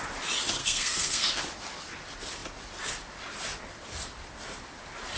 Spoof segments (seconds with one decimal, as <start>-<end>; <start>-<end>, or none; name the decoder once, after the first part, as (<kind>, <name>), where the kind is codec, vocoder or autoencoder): 0.6-1.4 (codec, SNAC)